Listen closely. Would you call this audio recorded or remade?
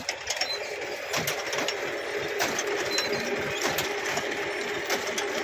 recorded